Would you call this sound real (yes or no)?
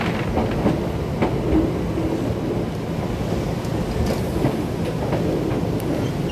yes